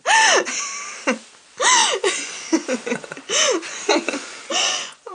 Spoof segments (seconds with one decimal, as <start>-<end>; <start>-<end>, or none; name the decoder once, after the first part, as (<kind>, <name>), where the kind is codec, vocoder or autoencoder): 1.8-5.1 (vocoder, Vocos)